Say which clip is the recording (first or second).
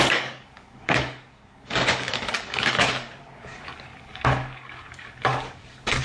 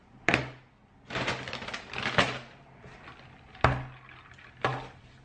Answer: second